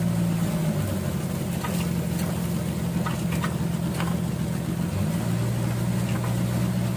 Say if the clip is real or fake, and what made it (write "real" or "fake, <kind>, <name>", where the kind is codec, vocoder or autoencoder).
real